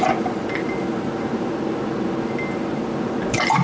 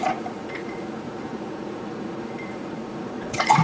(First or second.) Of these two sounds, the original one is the first